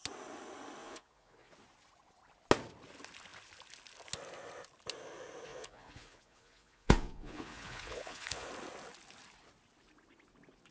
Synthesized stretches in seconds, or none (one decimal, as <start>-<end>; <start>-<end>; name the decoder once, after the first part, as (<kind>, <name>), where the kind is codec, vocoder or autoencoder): 0.8-1.5 (vocoder, Vocos); 5.5-8.5